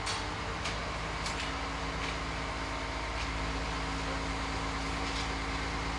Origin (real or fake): real